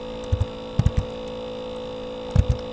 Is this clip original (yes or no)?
yes